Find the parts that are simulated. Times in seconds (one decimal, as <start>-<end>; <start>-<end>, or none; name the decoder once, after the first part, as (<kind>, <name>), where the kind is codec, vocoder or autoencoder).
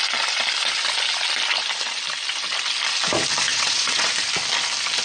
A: 3.5-4.1 (vocoder, WaveNeXt)